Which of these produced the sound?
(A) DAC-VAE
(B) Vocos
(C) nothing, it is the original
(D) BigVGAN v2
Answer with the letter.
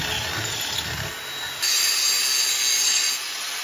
C